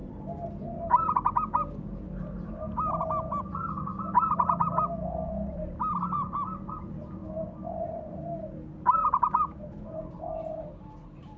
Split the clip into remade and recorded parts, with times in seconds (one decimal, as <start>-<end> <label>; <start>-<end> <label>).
0.0-11.4 recorded